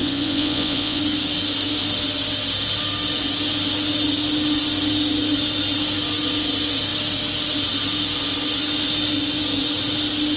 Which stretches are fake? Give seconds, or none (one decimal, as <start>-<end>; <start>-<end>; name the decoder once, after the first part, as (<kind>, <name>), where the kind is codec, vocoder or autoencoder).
0.0-1.0 (vocoder, Vocos)